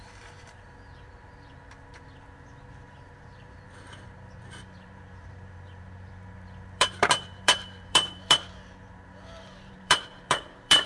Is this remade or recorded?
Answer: remade